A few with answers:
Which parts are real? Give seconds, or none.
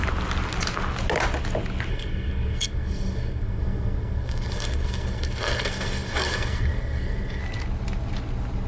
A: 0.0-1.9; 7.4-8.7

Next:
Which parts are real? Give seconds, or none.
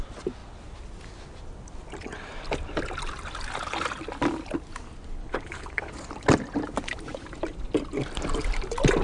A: 0.0-5.2; 5.9-9.0